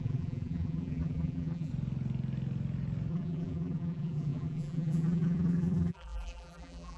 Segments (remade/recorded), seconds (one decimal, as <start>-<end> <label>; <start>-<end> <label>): 0.0-1.7 remade; 1.7-3.1 recorded; 3.1-7.0 remade